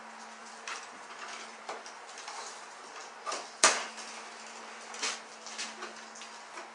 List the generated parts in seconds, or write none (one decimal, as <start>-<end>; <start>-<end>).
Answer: 0.4-2.4